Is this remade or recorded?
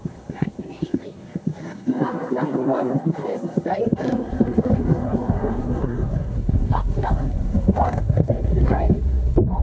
remade